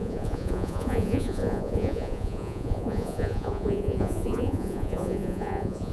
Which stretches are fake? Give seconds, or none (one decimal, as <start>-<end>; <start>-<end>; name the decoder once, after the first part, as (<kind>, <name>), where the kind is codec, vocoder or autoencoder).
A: 0.0-5.9 (vocoder, Vocos)